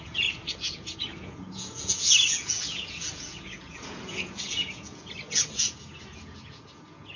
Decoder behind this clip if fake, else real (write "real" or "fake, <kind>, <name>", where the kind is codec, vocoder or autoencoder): fake, vocoder, Vocos